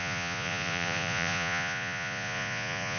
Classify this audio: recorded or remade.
remade